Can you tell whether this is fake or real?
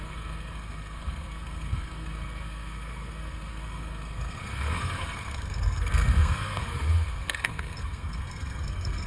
fake